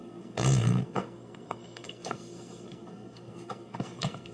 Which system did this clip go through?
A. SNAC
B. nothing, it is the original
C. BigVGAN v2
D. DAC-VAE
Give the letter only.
A